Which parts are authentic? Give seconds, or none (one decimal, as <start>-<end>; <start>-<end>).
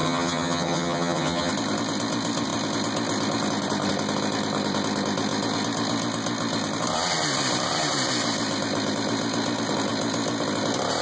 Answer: 1.5-11.0